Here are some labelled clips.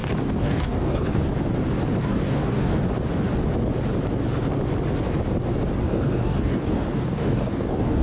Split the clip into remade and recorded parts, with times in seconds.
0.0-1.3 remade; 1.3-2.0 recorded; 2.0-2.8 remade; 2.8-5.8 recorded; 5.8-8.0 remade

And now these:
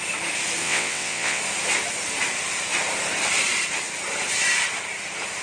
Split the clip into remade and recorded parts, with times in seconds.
0.0-0.6 recorded; 0.6-1.4 remade; 1.4-5.4 recorded

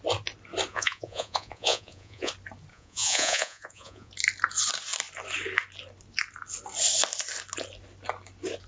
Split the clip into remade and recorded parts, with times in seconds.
0.0-0.7 recorded; 0.7-2.3 remade; 2.3-2.7 recorded; 2.7-4.1 remade; 4.1-8.7 recorded